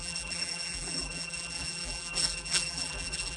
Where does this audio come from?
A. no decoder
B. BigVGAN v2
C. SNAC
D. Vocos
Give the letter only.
B